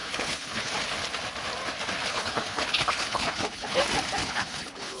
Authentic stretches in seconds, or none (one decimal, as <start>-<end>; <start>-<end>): 0.7-2.1; 3.8-4.2